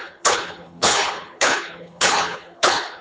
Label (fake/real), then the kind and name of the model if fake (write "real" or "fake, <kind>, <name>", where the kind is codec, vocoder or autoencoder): fake, codec, HILCodec